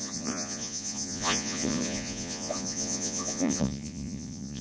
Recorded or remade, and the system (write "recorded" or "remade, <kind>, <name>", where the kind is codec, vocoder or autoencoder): remade, vocoder, Vocos